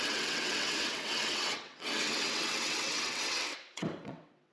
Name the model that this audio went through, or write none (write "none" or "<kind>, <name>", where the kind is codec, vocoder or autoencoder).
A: vocoder, WaveNeXt